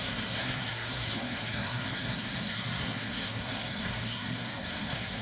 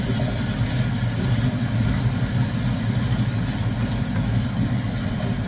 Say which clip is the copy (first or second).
first